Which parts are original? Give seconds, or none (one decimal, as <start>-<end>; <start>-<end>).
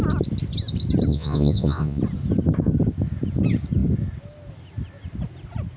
0.0-1.1; 2.0-5.8